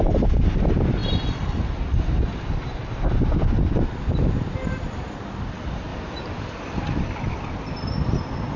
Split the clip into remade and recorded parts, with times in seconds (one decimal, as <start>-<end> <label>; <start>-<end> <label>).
0.0-8.6 recorded